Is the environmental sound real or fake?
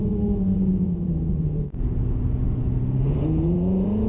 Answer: fake